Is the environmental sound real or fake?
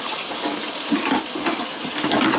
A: fake